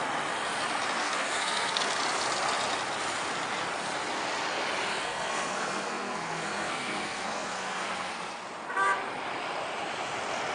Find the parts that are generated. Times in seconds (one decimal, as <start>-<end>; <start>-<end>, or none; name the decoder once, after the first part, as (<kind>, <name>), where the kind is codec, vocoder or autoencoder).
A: 1.0-2.0 (codec, SNAC); 4.9-8.1